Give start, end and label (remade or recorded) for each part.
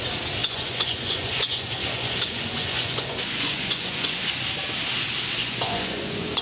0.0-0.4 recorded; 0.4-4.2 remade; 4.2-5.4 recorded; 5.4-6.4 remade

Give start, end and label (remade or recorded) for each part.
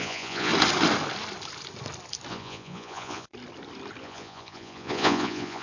0.0-0.5 remade; 0.5-2.3 recorded; 2.3-3.3 remade; 3.3-4.0 recorded; 4.0-5.6 remade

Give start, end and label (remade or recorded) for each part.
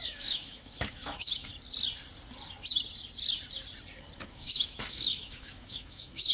0.0-1.5 remade; 1.5-4.2 recorded; 4.2-6.3 remade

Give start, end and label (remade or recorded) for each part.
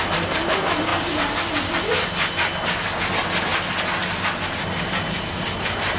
0.0-6.0 recorded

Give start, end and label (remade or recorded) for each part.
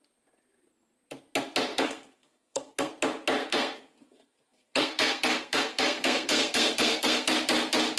0.0-1.7 recorded; 1.7-2.9 remade; 2.9-3.4 recorded; 3.4-7.3 remade; 7.3-8.0 recorded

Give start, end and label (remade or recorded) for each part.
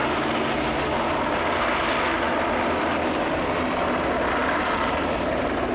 0.0-5.7 recorded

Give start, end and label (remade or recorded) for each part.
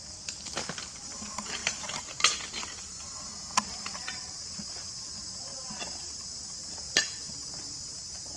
0.0-8.4 recorded